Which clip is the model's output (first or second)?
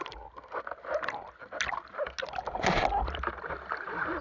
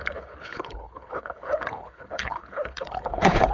second